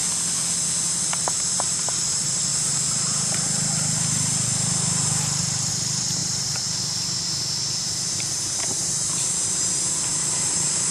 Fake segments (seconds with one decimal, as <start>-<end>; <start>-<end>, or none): 0.8-10.9